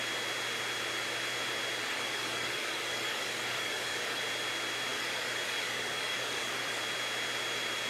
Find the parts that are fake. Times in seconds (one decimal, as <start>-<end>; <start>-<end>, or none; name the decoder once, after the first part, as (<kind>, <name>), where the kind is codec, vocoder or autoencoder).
1.8-4.2 (codec, DAC); 4.9-6.8